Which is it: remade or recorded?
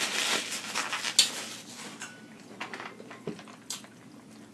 recorded